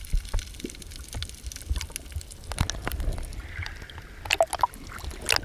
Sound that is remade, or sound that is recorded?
recorded